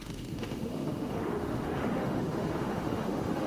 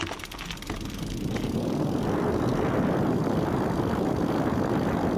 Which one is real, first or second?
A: second